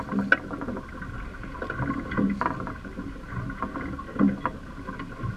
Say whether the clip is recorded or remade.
recorded